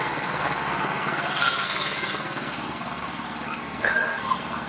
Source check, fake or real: fake